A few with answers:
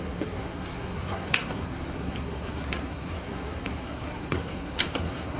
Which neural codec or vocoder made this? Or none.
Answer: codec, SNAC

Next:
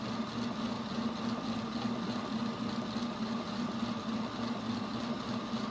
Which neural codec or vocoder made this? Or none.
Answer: none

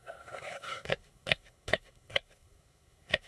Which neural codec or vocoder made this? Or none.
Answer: codec, SNAC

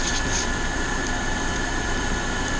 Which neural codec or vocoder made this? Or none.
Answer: none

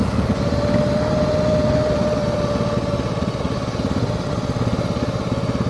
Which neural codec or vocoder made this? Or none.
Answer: none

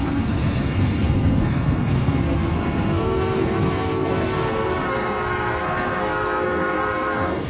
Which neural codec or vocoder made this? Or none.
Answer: codec, SNAC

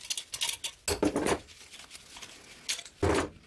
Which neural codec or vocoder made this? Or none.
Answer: none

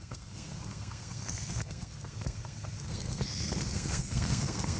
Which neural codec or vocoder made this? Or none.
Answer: codec, SNAC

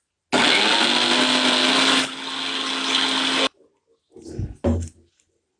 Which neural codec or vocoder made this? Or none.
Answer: none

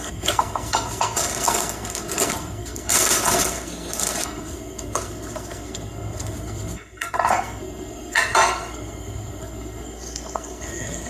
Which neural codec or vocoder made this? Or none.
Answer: codec, SNAC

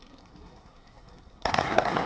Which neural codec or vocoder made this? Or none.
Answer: codec, SNAC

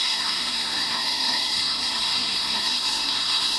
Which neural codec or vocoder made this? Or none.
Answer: codec, SNAC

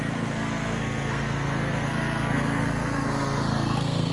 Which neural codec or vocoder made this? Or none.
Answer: codec, SNAC